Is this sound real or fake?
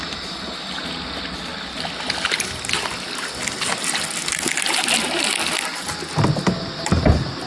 real